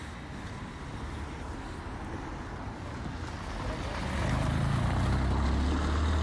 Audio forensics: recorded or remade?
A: recorded